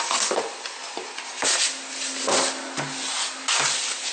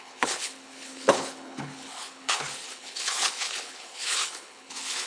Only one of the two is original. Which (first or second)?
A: first